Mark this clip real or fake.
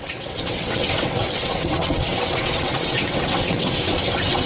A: fake